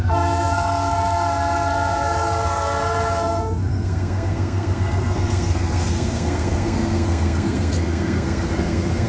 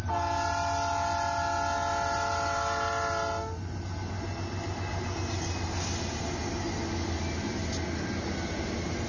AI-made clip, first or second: first